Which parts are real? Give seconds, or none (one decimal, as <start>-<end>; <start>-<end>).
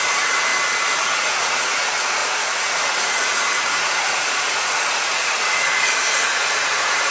0.5-1.1